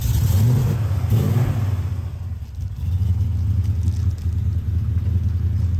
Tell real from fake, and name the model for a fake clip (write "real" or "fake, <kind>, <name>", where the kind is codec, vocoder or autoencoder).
real